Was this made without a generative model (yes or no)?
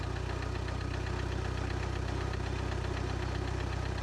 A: yes